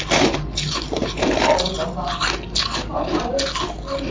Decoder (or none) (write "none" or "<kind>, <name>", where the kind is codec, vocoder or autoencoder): none